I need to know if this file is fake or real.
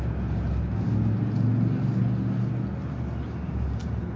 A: real